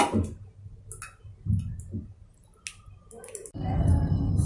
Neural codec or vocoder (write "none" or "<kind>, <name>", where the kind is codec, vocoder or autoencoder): none